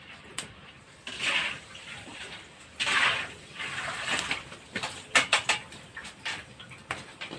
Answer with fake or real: fake